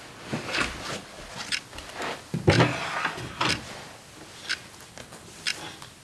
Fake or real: real